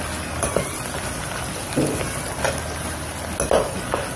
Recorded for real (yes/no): yes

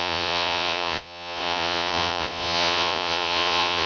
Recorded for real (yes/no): no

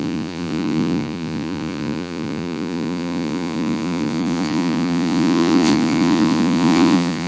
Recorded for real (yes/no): no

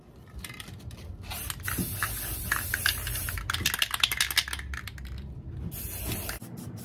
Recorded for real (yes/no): yes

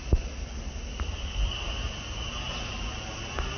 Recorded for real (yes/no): yes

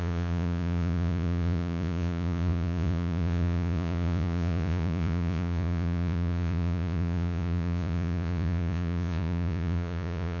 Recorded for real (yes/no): no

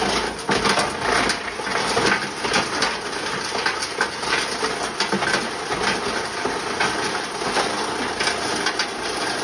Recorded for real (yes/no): yes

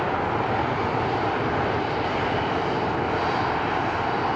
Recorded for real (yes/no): yes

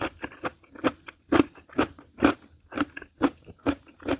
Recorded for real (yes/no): yes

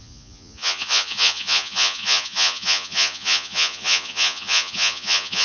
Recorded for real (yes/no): no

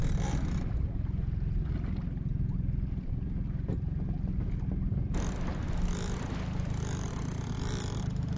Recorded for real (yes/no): yes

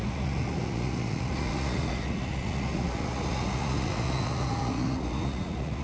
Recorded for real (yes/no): no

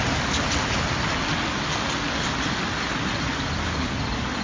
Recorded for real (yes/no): yes